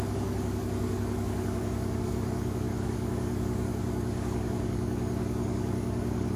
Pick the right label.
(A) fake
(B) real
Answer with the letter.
A